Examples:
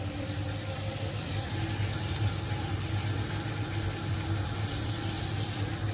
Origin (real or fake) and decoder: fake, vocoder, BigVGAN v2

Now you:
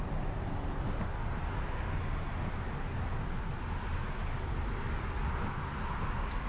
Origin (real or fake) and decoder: real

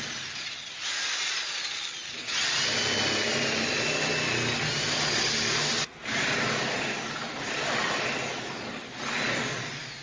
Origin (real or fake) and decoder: real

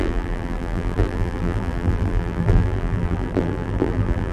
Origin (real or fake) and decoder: fake, vocoder, BigVGAN v2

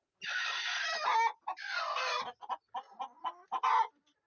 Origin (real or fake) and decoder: real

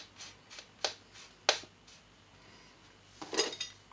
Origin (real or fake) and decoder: real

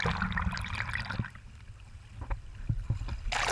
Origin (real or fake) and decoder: real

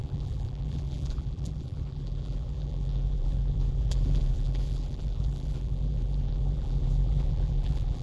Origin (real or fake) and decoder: fake, vocoder, BigVGAN v2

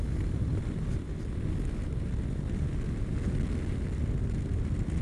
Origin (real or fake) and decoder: real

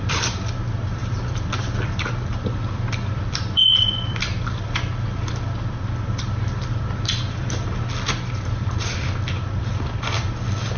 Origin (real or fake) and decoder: fake, vocoder, BigVGAN v2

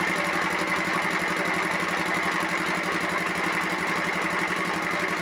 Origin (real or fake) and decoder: real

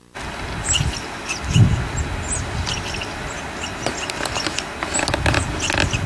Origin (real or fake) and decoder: real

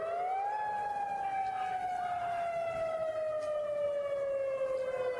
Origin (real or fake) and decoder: real